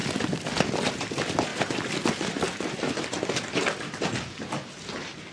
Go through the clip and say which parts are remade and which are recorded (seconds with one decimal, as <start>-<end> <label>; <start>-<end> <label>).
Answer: 0.0-5.3 recorded